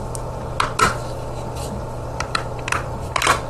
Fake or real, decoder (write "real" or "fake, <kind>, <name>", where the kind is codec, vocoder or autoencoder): real